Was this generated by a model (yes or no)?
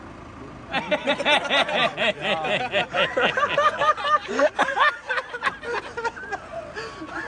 no